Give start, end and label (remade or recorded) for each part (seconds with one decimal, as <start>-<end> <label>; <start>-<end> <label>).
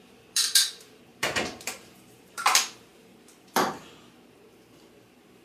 0.0-5.4 remade